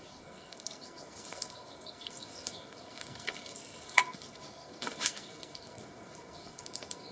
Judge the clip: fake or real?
fake